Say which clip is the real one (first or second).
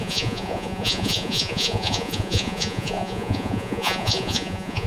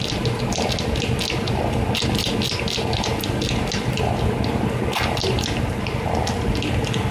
second